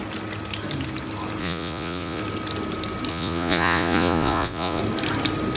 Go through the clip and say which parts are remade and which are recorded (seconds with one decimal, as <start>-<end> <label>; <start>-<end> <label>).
0.0-1.4 recorded; 1.4-2.2 remade; 2.2-3.1 recorded; 3.1-4.8 remade; 4.8-5.6 recorded